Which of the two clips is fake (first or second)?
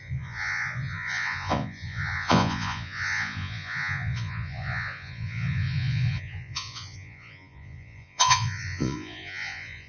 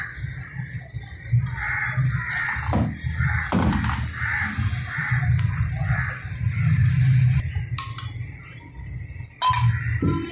first